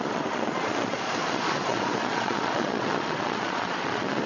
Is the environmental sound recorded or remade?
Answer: remade